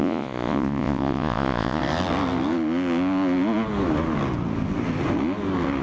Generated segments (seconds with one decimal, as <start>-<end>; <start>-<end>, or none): 0.0-1.8